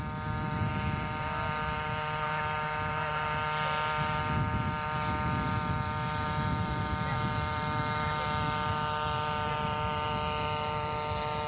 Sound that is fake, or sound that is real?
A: real